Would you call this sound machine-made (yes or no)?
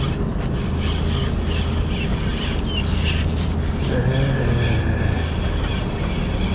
no